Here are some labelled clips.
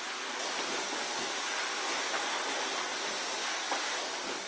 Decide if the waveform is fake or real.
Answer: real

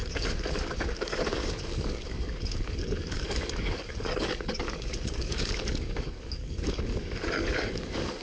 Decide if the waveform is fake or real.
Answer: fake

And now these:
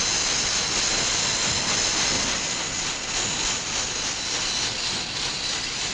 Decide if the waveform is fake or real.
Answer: real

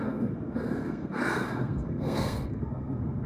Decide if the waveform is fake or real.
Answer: fake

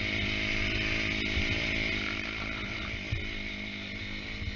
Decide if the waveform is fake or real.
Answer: real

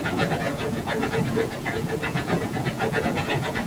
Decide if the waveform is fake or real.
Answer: fake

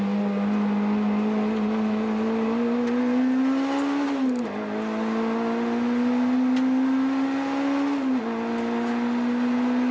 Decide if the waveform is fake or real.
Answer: real